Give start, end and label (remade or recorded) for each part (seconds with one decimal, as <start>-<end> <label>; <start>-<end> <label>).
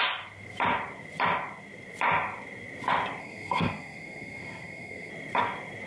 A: 0.0-3.2 recorded; 3.2-5.1 remade; 5.1-5.9 recorded